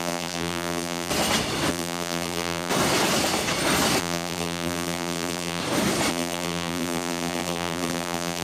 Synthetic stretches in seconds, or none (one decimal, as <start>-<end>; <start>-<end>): 0.0-1.1; 1.7-2.7; 4.0-5.6; 6.1-8.4